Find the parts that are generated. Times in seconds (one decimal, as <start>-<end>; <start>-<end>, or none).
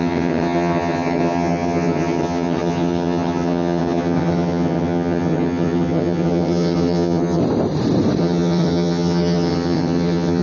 0.0-7.4; 8.2-10.4